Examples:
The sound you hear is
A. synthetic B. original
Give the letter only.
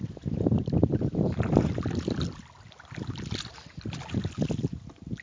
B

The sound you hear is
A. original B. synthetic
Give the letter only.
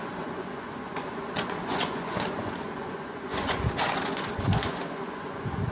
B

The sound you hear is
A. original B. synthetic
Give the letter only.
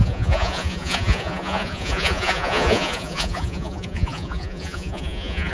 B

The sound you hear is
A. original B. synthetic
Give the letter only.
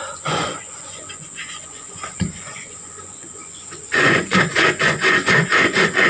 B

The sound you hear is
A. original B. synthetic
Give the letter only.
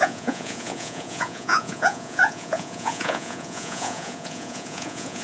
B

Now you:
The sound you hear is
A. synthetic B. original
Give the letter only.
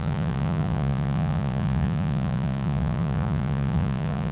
A